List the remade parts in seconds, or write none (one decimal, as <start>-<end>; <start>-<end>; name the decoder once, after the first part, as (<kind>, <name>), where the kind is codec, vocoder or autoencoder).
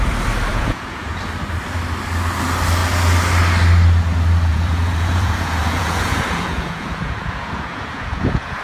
0.5-1.2 (vocoder, Vocos); 4.5-8.6